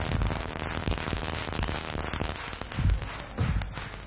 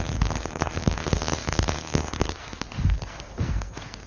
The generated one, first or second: second